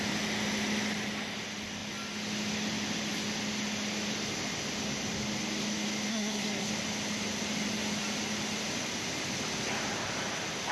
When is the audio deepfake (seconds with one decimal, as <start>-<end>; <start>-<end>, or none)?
6.1-6.7